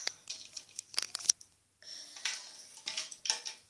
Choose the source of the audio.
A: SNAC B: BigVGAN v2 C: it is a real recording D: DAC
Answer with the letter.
C